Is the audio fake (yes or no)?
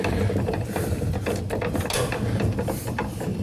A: no